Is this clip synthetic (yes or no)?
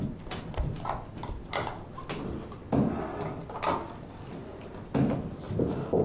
no